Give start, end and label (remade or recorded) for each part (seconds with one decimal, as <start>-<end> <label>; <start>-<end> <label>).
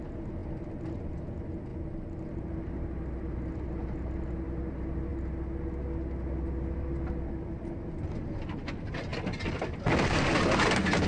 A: 0.0-11.1 recorded